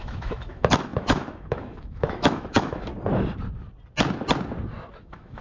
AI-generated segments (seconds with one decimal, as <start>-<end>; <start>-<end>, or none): 0.0-2.9; 5.0-5.4